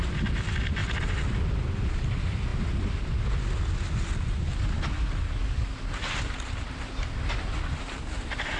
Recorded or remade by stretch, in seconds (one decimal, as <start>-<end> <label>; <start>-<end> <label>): 0.0-8.6 recorded